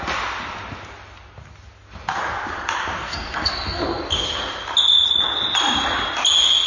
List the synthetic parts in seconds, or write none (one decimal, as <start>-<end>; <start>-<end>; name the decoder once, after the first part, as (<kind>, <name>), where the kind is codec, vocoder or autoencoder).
3.0-4.0 (codec, SNAC)